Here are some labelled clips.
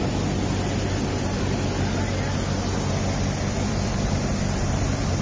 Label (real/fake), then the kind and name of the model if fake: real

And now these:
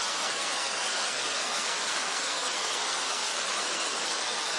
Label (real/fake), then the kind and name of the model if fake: fake, codec, SNAC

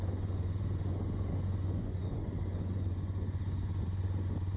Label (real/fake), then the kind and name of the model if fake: fake, vocoder, Vocos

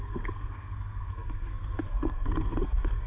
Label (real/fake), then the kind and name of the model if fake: fake, codec, SNAC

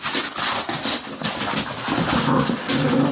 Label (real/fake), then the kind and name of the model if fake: real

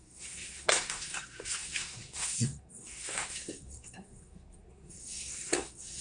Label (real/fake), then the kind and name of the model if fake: fake, codec, SNAC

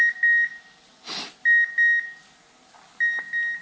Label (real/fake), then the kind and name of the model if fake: real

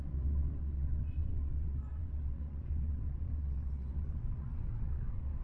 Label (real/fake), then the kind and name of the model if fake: fake, vocoder, WaveNeXt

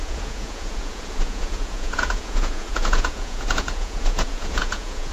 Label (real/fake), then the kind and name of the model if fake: fake, vocoder, Vocos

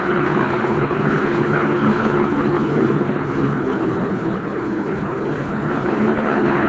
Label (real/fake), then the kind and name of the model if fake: fake, codec, HILCodec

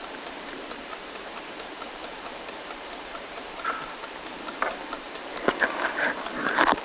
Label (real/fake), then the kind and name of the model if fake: fake, vocoder, BigVGAN v2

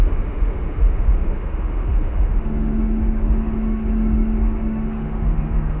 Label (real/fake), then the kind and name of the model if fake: fake, autoencoder, DAC-VAE